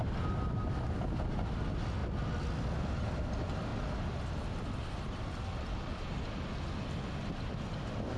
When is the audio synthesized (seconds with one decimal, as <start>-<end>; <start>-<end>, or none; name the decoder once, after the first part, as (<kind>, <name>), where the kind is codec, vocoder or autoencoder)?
none